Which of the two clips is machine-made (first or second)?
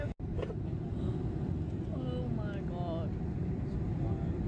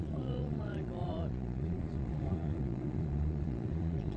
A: second